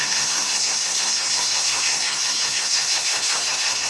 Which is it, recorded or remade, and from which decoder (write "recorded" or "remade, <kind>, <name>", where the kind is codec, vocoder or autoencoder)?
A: remade, codec, SNAC